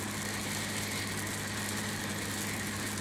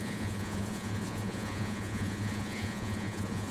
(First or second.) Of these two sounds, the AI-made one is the second